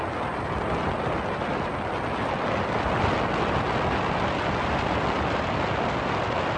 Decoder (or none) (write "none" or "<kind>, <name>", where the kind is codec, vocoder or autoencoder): none